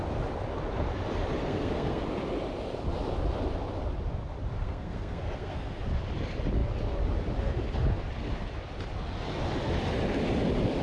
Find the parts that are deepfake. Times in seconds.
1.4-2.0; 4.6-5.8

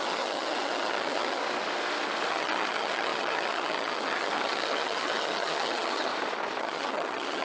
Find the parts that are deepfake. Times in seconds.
0.0-1.4; 2.3-6.1; 6.6-7.4

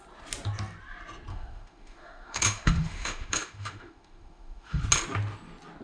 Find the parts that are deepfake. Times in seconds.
1.3-4.8

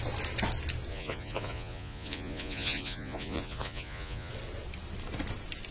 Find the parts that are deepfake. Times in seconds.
0.9-4.3

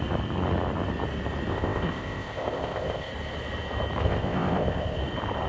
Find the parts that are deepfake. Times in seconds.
1.5-3.1; 4.0-5.0

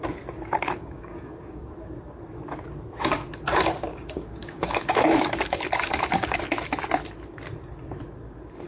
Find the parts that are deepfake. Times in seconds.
0.8-1.7; 3.9-6.4

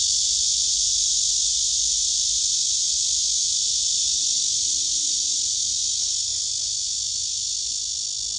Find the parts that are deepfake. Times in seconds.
none

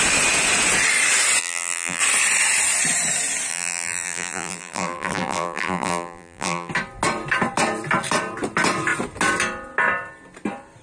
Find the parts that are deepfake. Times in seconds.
1.4-2.0; 3.5-6.7